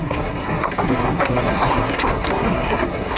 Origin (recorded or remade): remade